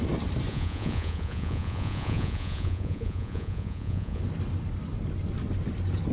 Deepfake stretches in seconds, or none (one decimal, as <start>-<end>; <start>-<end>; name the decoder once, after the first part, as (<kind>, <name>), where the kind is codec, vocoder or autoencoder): 0.5-4.2 (vocoder, Vocos)